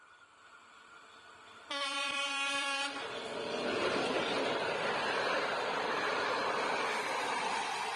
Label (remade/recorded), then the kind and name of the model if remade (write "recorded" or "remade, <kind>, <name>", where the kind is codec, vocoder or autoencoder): remade, vocoder, BigVGAN v2